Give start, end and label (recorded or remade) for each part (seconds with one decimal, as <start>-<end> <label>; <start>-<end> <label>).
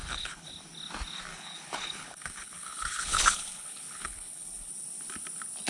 0.0-0.5 remade; 0.5-1.3 recorded; 1.3-4.7 remade; 4.7-5.7 recorded